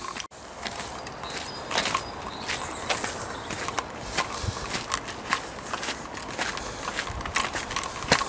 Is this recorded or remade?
recorded